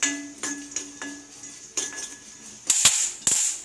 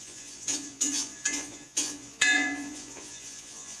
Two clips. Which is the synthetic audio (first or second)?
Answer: second